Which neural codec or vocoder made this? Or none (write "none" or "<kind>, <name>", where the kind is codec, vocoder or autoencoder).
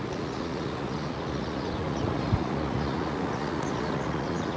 vocoder, Vocos